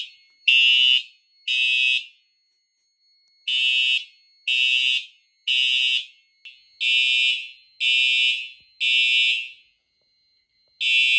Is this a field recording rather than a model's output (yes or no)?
yes